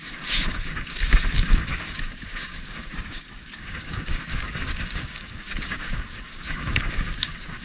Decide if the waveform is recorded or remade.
remade